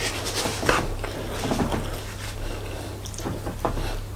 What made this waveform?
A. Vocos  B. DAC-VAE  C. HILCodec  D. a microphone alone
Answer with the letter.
D